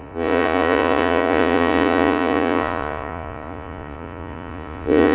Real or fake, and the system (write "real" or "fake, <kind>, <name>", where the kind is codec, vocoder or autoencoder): fake, vocoder, Vocos